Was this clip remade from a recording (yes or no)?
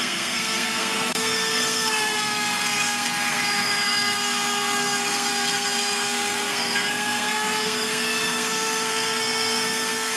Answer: yes